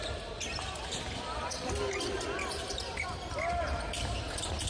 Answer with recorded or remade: recorded